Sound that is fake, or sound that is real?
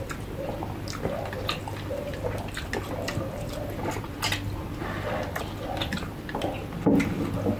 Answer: real